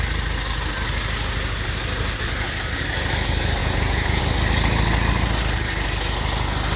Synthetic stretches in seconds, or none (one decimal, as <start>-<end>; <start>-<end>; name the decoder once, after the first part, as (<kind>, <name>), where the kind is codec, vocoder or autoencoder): 3.6-4.2 (vocoder, Vocos)